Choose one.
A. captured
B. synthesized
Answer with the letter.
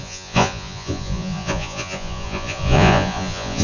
B